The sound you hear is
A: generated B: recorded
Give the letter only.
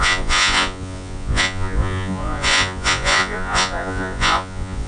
A